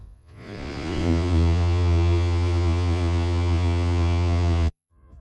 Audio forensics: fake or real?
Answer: fake